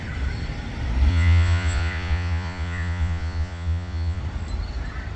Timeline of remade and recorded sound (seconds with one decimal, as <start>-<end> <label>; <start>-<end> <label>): 0.0-1.1 recorded; 1.1-4.2 remade; 4.2-5.2 recorded